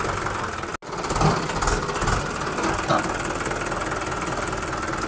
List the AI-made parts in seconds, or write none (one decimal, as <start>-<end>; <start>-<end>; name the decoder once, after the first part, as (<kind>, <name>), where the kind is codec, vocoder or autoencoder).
none